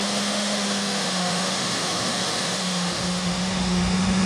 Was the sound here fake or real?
fake